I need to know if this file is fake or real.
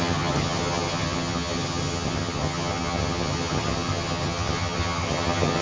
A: fake